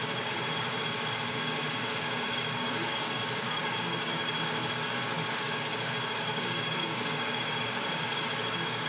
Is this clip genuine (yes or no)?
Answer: no